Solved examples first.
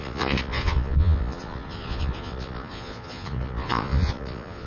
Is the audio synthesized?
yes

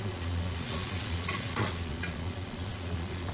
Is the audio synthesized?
yes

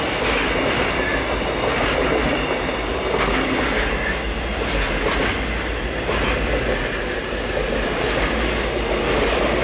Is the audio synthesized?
no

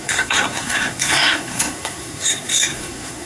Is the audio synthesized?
yes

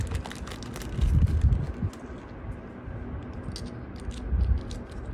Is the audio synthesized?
no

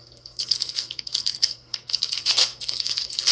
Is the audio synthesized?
yes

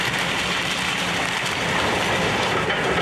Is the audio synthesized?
no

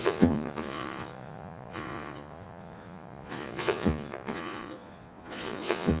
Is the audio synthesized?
yes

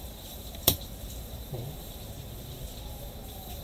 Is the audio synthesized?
yes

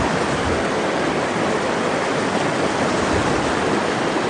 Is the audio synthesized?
no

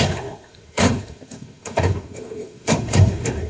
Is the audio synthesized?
yes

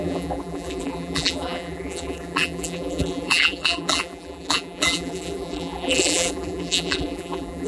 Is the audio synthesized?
yes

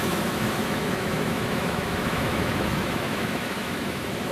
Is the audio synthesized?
yes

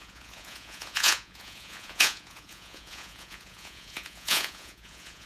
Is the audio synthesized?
yes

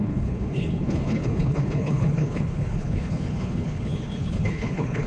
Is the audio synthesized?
yes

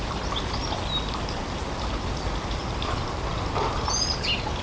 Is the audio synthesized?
no